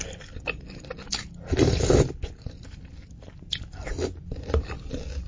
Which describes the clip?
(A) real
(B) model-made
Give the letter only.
A